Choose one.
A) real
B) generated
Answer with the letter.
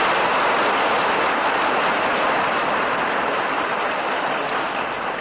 A